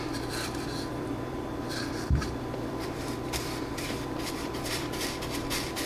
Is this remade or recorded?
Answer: remade